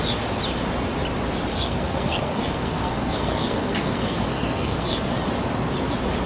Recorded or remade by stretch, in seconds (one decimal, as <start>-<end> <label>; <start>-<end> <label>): 0.0-1.5 recorded; 1.5-5.1 remade; 5.1-6.3 recorded